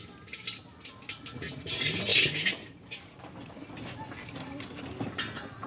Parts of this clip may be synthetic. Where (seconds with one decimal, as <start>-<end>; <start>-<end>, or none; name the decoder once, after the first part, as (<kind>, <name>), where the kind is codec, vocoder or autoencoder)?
none